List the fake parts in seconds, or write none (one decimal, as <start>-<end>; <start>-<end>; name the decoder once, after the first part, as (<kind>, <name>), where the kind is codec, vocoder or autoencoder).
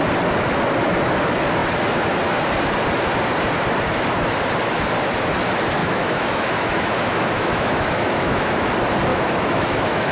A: 5.8-8.7 (autoencoder, DAC-VAE); 9.1-10.1